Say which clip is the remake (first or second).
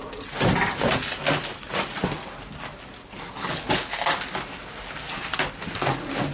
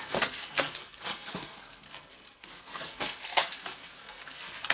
second